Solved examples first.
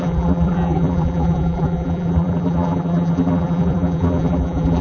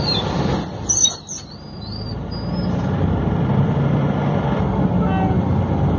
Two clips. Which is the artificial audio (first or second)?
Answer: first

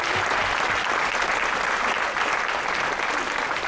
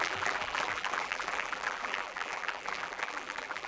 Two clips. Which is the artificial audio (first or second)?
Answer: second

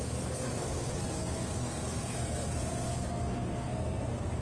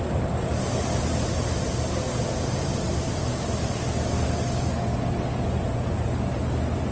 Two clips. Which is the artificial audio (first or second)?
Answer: first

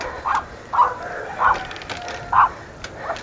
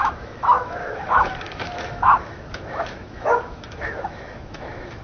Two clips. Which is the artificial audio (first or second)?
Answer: second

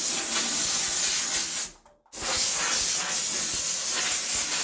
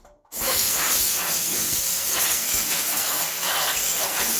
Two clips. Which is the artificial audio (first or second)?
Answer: second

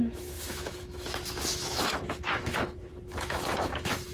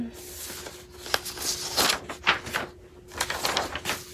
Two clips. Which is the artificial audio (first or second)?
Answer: first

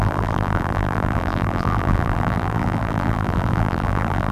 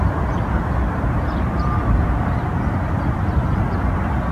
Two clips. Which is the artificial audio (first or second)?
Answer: first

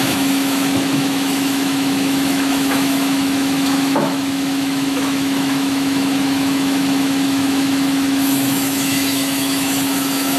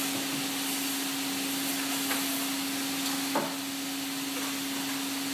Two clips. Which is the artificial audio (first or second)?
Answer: first